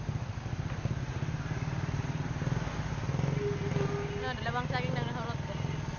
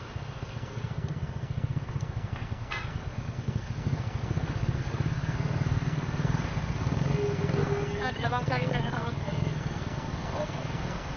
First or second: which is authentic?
first